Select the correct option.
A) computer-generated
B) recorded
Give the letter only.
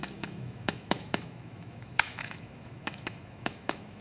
A